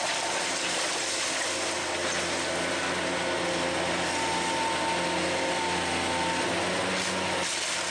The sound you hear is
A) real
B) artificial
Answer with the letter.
A